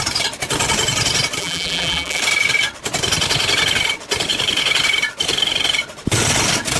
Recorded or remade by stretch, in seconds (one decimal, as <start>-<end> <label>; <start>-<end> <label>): 0.0-1.4 recorded; 1.4-2.2 remade; 2.2-6.8 recorded